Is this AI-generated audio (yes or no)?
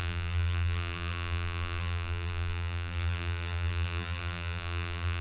yes